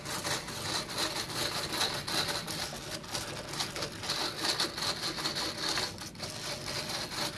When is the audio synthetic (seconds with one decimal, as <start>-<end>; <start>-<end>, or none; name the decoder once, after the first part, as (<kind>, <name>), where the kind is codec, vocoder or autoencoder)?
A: none